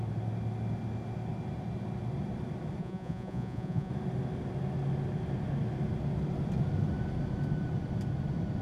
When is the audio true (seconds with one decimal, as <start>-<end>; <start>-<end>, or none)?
0.0-2.8; 3.9-8.6